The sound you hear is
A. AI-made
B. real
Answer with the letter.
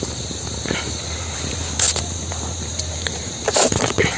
A